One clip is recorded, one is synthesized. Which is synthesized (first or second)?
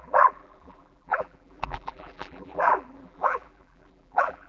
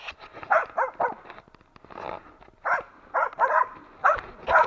first